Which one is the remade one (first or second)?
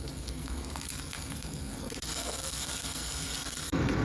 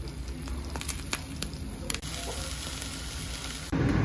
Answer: first